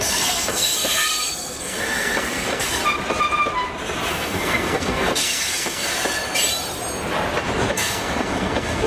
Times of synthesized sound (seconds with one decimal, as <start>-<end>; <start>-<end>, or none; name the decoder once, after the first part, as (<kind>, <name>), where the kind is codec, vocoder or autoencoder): 0.0-2.8 (codec, SNAC); 4.1-5.9; 7.7-8.9